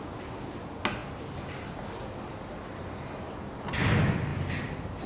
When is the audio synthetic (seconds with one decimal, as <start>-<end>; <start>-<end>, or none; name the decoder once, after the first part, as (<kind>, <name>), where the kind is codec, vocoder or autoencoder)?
none